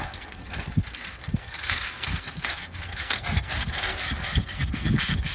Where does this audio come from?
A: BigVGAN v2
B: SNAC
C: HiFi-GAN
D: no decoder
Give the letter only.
B